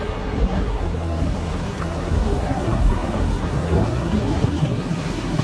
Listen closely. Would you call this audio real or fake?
fake